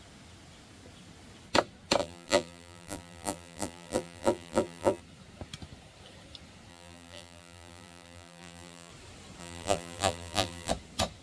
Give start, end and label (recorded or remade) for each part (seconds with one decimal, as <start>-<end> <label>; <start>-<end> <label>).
0.0-2.0 recorded; 2.0-5.0 remade; 5.0-6.7 recorded; 6.7-8.9 remade; 8.9-9.4 recorded; 9.4-10.7 remade; 10.7-11.2 recorded